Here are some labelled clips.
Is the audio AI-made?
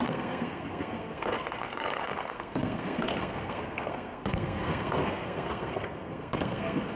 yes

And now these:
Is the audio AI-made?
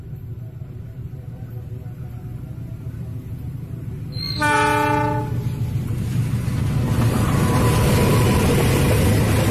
no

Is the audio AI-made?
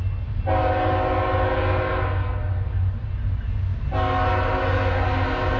no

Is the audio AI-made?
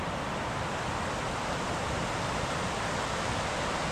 no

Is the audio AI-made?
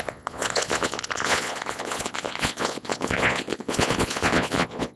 yes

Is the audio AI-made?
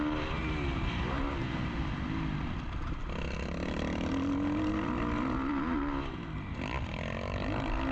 no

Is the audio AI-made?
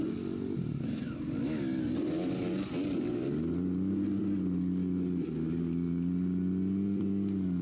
no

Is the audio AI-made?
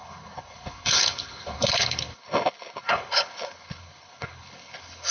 yes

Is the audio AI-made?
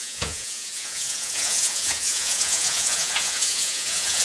yes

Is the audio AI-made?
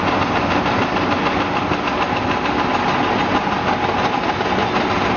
no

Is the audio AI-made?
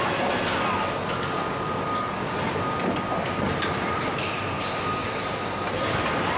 no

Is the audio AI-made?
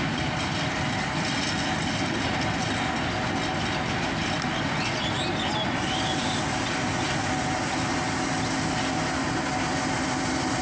no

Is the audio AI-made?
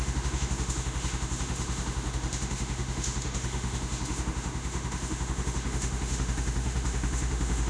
yes